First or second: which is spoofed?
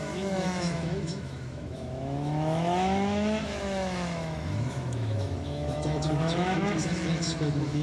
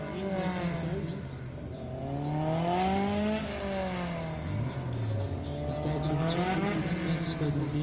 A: first